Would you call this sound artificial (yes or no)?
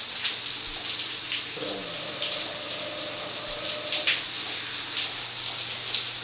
no